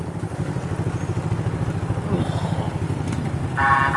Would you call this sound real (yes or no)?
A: yes